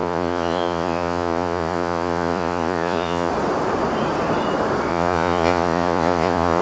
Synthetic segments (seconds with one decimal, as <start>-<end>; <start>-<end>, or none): 0.0-3.3; 4.9-6.6

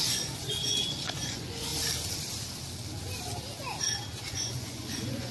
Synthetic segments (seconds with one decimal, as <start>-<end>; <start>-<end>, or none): 0.0-1.7; 4.3-5.3

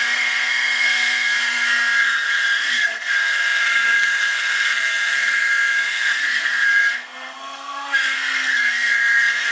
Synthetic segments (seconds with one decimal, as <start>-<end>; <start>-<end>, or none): 0.0-9.5

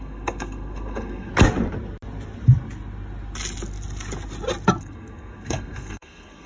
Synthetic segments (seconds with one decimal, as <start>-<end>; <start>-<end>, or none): 0.0-1.3; 4.8-6.5

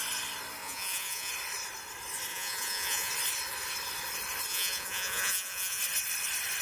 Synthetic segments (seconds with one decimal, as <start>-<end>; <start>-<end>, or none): 0.6-1.3; 2.3-3.1; 4.5-5.8

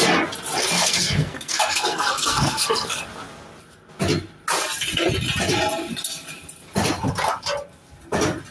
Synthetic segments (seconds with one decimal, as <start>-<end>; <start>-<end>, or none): 0.6-3.0

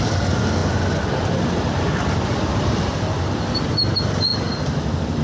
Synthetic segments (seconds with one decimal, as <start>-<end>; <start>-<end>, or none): none